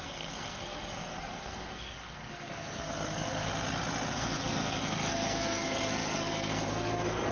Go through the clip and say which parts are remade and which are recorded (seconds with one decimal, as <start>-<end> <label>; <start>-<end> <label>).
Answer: 0.0-3.5 remade; 3.5-4.1 recorded; 4.1-7.3 remade